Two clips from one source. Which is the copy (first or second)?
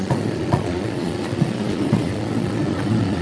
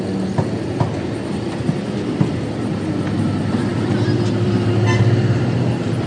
first